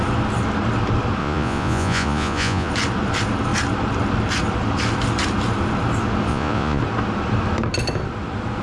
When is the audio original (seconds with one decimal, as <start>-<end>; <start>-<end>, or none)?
0.0-1.2; 2.7-6.3; 6.8-8.6